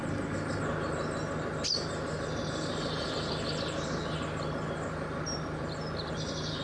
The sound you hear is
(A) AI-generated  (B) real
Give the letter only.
B